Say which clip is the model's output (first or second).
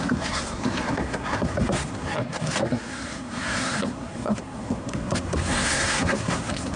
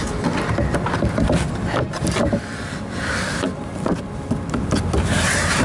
first